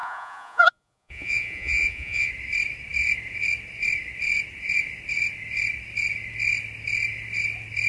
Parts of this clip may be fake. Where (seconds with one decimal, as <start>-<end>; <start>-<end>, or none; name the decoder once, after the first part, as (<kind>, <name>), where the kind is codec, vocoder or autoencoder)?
0.0-2.3 (vocoder, Vocos)